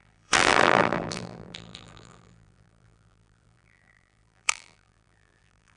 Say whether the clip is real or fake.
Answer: fake